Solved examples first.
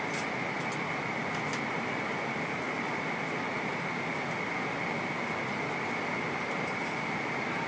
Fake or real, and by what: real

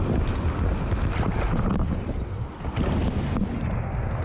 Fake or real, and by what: real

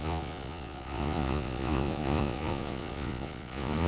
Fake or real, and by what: fake, vocoder, Vocos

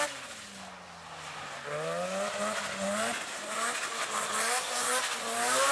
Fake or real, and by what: real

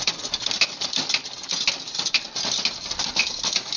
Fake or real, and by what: real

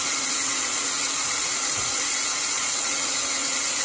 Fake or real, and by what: fake, vocoder, Vocos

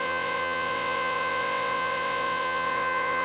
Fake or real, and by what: fake, vocoder, WaveNeXt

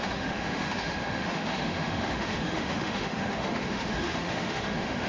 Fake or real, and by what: fake, autoencoder, DAC-VAE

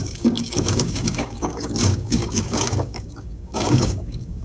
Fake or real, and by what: fake, codec, DAC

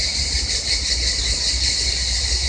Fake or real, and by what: real